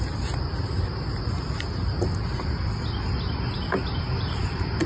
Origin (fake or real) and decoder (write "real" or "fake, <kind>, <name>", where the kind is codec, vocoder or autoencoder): real